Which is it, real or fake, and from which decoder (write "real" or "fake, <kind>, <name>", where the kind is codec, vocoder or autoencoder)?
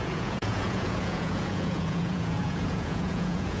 fake, vocoder, Vocos